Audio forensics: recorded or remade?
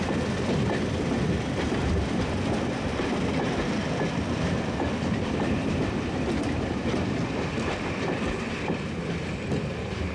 recorded